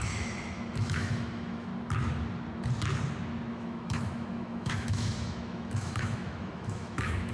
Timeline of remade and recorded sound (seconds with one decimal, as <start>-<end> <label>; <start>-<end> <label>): 0.0-1.7 remade; 1.7-3.5 recorded; 3.5-7.3 remade